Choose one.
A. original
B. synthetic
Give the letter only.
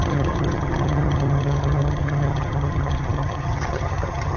B